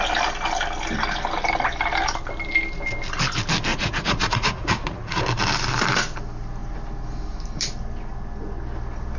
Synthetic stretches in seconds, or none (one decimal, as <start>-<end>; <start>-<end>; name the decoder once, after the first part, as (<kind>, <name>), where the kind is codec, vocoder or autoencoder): 3.7-5.2 (vocoder, Vocos)